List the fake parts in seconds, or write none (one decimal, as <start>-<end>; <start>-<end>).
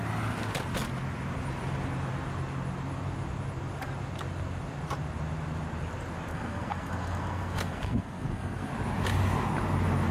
6.3-8.7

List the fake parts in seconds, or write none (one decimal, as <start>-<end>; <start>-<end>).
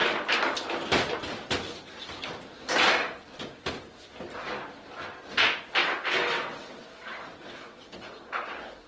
5.8-8.9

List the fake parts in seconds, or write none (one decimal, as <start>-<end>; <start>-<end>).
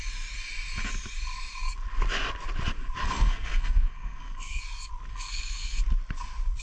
3.0-4.6; 5.1-5.8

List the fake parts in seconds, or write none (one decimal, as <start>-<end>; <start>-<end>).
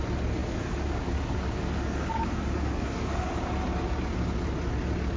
0.4-3.5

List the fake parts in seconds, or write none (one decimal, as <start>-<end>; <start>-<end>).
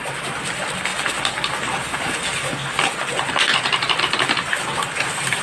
none